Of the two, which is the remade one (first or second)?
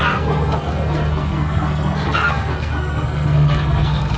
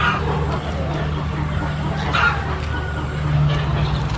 first